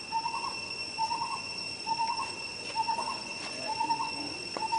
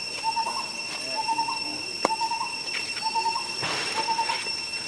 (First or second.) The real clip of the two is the second